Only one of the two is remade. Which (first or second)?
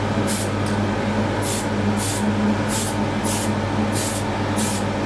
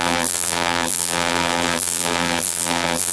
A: second